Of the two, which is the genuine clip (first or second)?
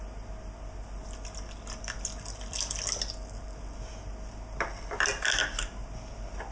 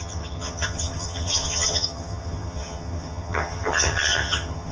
first